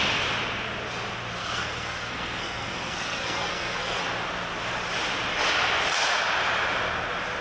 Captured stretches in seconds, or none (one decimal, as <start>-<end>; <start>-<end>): 0.0-1.4; 4.0-7.4